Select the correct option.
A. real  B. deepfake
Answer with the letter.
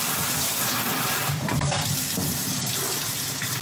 B